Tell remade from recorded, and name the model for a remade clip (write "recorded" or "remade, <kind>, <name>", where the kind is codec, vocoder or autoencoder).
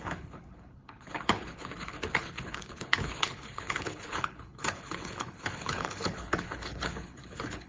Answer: remade, codec, HILCodec